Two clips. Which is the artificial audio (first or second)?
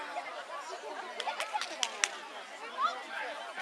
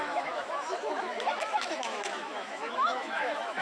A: second